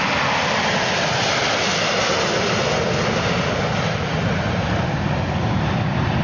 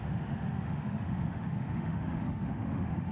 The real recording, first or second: first